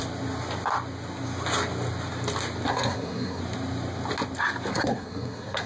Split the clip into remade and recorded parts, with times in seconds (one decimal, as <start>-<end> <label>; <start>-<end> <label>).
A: 0.0-2.7 recorded; 2.7-3.4 remade; 3.4-4.7 recorded; 4.7-5.7 remade